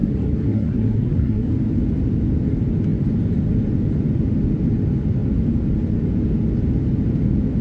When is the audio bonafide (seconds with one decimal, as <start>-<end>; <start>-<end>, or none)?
1.5-7.6